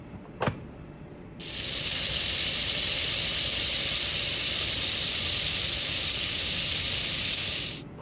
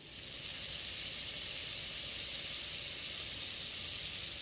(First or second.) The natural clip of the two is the second